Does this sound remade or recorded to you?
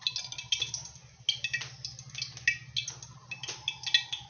recorded